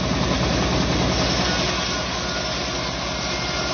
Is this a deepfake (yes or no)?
no